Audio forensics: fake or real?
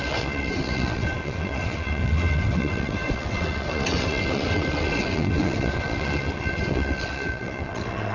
fake